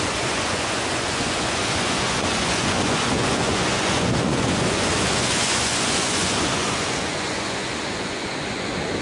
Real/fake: fake